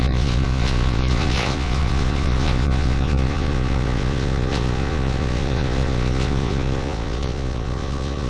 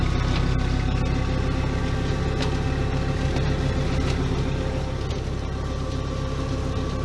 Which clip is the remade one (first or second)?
first